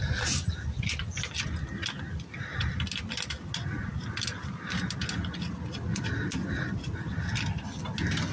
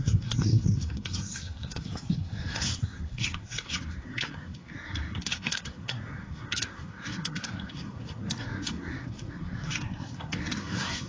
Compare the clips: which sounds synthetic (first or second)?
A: second